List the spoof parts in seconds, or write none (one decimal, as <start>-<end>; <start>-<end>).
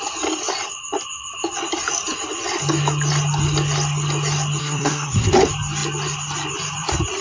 4.6-5.3